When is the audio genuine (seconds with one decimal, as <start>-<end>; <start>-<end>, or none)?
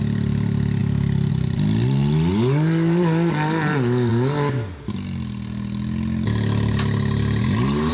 0.0-7.9